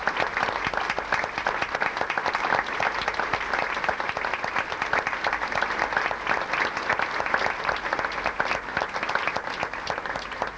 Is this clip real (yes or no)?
yes